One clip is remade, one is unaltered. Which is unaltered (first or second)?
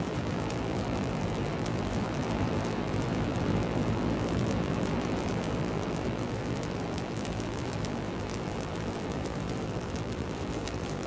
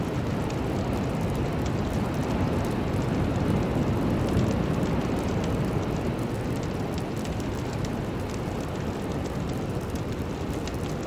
second